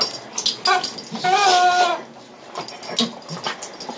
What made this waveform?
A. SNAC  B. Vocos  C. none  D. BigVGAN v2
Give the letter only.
C